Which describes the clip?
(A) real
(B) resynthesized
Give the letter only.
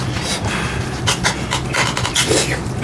A